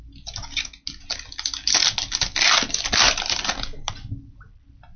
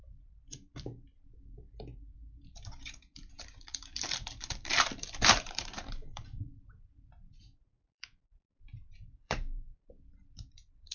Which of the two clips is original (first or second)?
first